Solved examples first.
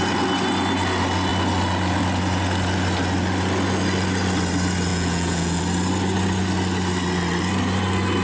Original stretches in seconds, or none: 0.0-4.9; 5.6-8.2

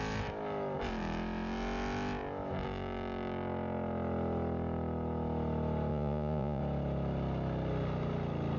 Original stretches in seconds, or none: 0.0-5.9; 6.6-8.6

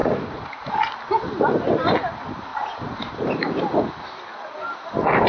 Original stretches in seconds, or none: 0.7-5.3

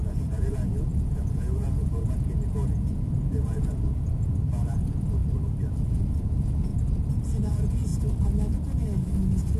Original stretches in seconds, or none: 5.2-5.7; 6.7-7.2; 7.9-9.6